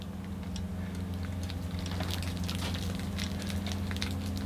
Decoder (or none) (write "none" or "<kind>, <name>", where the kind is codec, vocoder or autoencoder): none